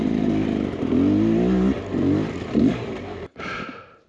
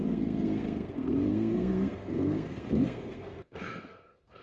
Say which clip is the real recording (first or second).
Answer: first